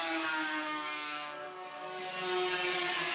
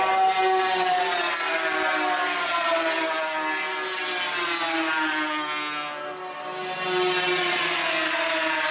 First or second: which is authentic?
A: second